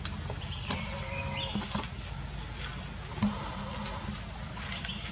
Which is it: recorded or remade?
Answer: recorded